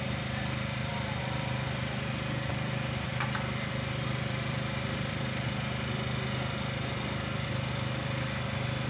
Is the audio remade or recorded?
recorded